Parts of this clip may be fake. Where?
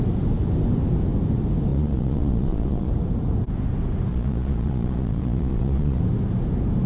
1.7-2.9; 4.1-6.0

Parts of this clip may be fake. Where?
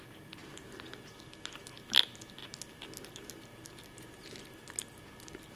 none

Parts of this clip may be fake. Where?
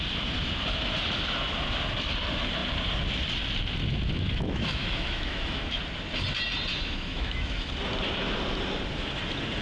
3.8-5.8; 6.7-7.7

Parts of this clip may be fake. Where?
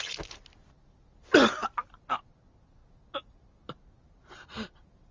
none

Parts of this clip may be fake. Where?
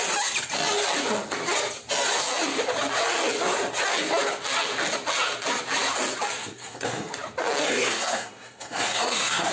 6.4-7.1; 7.6-9.5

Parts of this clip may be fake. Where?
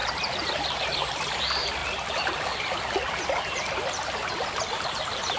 0.0-5.4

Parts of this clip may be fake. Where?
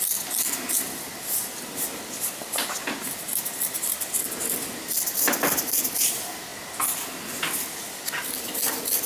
none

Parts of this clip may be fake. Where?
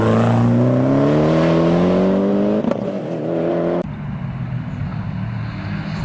none